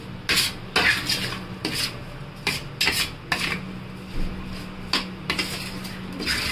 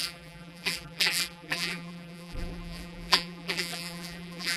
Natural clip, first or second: first